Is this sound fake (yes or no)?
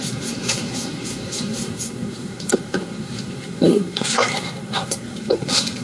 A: yes